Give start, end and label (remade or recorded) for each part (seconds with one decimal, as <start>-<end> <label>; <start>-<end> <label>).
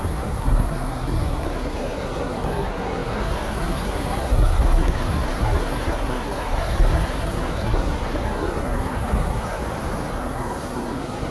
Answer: 0.0-9.6 remade; 9.6-10.1 recorded; 10.1-11.3 remade